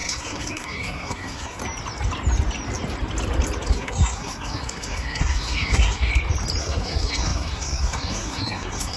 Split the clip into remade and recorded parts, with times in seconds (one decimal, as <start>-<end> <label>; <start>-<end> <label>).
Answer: 0.0-1.6 remade; 1.6-3.7 recorded; 3.7-6.1 remade; 6.1-6.6 recorded; 6.6-9.0 remade